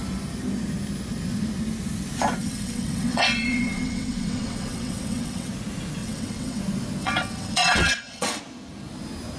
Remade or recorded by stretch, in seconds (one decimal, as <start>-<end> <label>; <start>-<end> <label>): 0.0-2.4 recorded; 2.4-5.5 remade; 5.5-6.0 recorded; 6.0-6.6 remade; 6.6-7.0 recorded; 7.0-8.4 remade; 8.4-9.4 recorded

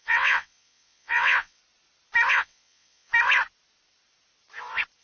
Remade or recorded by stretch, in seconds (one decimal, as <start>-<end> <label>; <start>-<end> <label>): 0.0-1.6 remade; 1.6-2.3 recorded; 2.3-3.1 remade; 3.1-5.0 recorded

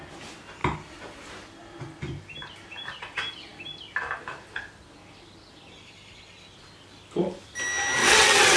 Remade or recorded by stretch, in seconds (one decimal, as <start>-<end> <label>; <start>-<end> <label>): 0.0-8.0 recorded; 8.0-8.6 remade

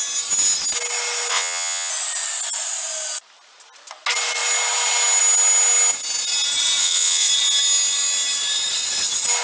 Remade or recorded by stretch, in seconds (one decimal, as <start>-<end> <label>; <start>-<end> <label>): 0.0-1.3 recorded; 1.3-1.9 remade; 1.9-6.8 recorded; 6.8-7.3 remade; 7.3-9.4 recorded

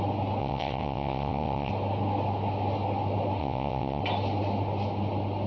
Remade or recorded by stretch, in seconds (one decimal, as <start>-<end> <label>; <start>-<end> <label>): 0.0-0.4 recorded; 0.4-1.7 remade; 1.7-3.4 recorded; 3.4-4.0 remade; 4.0-5.5 recorded

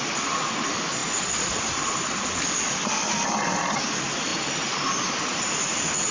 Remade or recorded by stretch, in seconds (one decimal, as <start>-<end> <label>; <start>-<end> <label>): 0.0-6.1 recorded

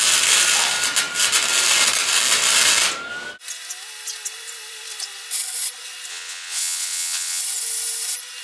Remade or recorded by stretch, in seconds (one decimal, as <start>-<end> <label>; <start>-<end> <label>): 0.0-6.1 recorded; 6.1-7.4 remade; 7.4-8.4 recorded